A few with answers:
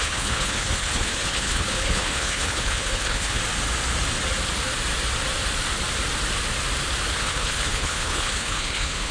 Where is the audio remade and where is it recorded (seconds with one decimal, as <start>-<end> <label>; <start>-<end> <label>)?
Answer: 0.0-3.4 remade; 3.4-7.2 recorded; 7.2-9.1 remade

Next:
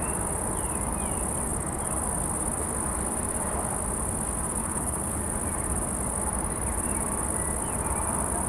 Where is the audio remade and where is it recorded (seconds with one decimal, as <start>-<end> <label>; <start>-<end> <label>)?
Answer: 0.0-4.6 recorded; 4.6-5.2 remade; 5.2-8.5 recorded

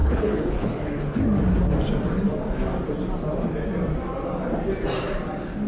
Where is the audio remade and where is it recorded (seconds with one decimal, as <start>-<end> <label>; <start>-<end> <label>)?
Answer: 0.0-1.2 remade; 1.2-5.7 recorded

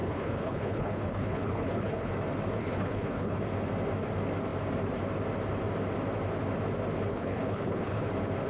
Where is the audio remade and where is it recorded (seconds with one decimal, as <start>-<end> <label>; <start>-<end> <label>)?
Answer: 0.0-2.1 remade; 2.1-2.6 recorded; 2.6-3.4 remade; 3.4-7.1 recorded; 7.1-8.1 remade; 8.1-8.5 recorded

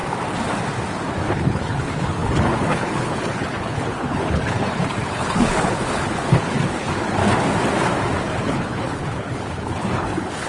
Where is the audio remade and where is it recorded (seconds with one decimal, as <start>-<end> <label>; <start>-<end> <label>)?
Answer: 0.0-1.3 recorded; 1.3-7.2 remade; 7.2-8.4 recorded; 8.4-10.5 remade

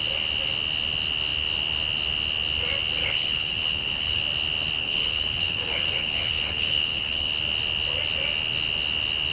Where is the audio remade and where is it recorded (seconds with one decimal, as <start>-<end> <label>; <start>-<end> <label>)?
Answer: 0.0-3.0 recorded; 3.0-4.2 remade; 4.2-4.8 recorded; 4.8-7.3 remade; 7.3-9.3 recorded

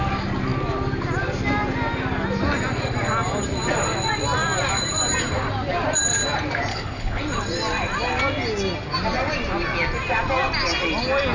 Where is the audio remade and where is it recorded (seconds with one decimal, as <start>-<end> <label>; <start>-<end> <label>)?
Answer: 0.0-6.7 recorded; 6.7-7.2 remade; 7.2-11.3 recorded

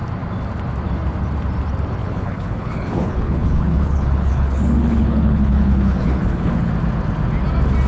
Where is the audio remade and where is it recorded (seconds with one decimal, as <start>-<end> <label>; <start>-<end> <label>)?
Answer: 0.0-2.0 recorded; 2.0-6.7 remade; 6.7-7.9 recorded